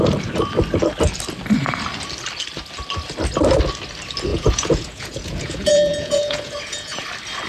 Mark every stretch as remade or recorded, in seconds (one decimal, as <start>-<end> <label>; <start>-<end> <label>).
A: 0.0-4.3 recorded; 4.3-7.0 remade; 7.0-7.5 recorded